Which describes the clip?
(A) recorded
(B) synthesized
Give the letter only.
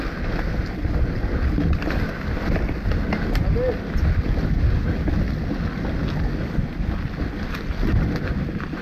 A